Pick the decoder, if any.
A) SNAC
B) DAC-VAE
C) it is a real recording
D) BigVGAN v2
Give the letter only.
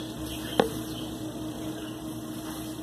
C